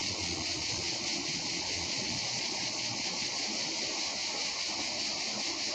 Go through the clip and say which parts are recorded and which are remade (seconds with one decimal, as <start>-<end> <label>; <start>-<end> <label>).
0.0-3.4 remade; 3.4-5.7 recorded